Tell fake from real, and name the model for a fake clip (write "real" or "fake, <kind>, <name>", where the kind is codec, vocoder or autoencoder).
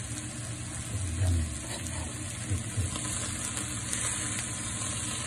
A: real